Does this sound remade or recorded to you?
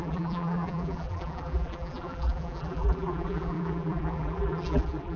remade